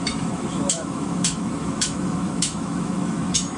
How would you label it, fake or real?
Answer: fake